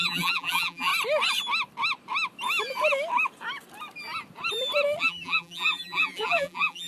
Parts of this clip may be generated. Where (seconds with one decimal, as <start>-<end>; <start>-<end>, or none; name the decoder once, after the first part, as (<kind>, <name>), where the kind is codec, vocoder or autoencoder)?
0.0-0.9 (vocoder, BigVGAN v2); 5.0-6.9

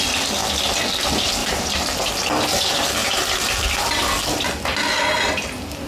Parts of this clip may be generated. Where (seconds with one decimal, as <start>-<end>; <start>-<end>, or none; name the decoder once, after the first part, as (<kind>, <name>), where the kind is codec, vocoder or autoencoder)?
1.4-2.1 (vocoder, BigVGAN v2)

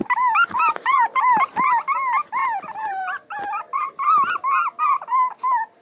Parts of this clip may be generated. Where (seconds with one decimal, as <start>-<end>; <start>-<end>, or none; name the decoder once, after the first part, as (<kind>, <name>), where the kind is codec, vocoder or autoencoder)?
0.0-0.6 (vocoder, BigVGAN v2); 2.4-3.6

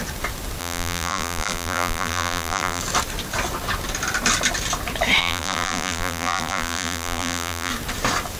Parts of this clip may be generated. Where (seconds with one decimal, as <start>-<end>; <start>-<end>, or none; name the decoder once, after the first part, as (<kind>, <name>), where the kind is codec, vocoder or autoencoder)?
0.6-2.8 (vocoder, BigVGAN v2); 5.2-7.7